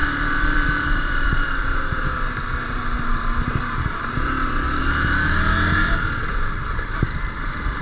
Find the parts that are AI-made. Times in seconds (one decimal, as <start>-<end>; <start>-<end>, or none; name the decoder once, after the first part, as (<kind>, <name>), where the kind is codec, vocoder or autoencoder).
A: 0.0-1.1 (vocoder, BigVGAN v2); 6.6-7.8